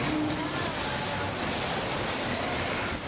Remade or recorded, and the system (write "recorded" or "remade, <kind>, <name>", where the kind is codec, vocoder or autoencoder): recorded